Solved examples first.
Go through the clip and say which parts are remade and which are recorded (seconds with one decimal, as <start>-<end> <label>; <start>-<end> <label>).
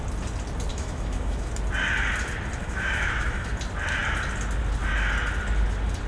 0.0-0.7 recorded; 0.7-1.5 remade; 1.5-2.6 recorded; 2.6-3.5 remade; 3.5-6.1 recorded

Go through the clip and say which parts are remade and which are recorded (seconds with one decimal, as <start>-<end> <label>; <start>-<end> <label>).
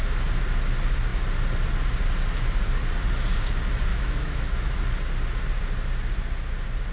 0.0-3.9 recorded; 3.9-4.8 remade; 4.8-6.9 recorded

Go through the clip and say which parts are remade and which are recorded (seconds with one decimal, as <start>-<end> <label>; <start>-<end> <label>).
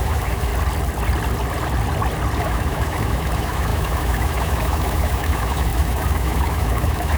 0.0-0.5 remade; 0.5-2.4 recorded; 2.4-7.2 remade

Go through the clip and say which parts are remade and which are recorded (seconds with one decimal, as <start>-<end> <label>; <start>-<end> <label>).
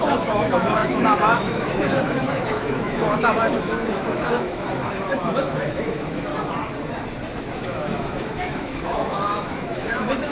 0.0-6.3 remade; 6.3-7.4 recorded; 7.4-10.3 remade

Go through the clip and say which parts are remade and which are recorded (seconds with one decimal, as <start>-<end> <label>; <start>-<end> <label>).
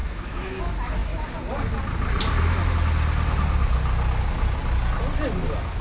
0.0-0.6 remade; 0.6-5.8 recorded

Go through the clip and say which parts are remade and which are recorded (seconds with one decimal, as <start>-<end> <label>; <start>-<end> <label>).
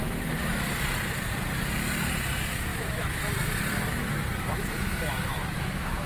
0.0-0.5 remade; 0.5-2.7 recorded; 2.7-3.2 remade; 3.2-4.0 recorded; 4.0-6.1 remade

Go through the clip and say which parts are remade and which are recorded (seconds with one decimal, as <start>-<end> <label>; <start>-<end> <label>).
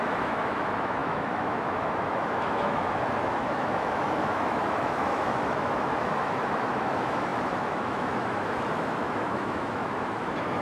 0.0-10.6 remade